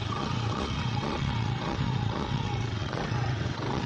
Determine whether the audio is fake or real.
fake